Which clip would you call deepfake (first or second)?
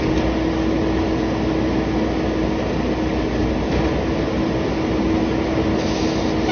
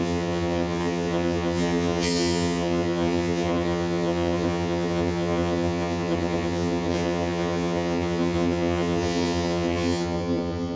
second